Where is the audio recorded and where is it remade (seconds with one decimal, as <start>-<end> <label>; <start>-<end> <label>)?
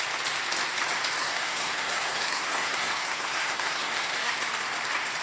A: 0.0-1.2 recorded; 1.2-4.3 remade; 4.3-5.2 recorded